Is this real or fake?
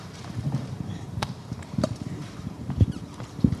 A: fake